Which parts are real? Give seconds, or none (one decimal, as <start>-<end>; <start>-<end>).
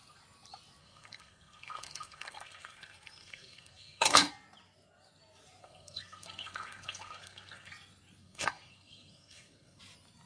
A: 0.0-0.8; 4.3-5.6; 7.7-8.2; 9.8-10.3